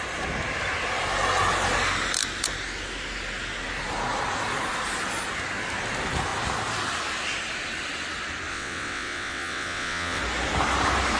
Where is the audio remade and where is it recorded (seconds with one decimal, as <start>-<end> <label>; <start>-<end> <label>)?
0.0-8.5 recorded; 8.5-10.2 remade; 10.2-11.2 recorded